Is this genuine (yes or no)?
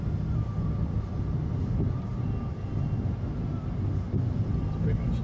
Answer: yes